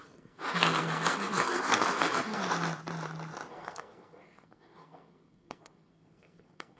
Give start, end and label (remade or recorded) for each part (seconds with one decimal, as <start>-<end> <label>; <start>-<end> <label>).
0.0-2.4 remade; 2.4-3.5 recorded; 3.5-6.8 remade